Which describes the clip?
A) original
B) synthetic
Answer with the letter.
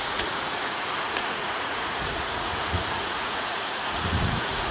B